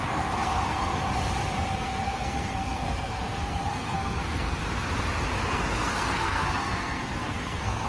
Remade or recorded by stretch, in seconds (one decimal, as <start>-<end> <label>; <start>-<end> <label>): 0.0-0.9 remade; 0.9-1.7 recorded; 1.7-4.6 remade; 4.6-5.5 recorded; 5.5-7.9 remade